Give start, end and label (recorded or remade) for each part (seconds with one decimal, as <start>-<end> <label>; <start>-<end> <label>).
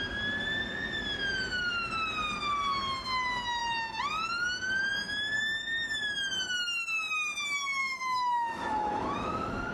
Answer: 0.0-7.8 recorded; 7.8-9.7 remade